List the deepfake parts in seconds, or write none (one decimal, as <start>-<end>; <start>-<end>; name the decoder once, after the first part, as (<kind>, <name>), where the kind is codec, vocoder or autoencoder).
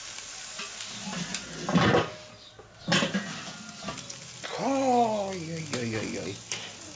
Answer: none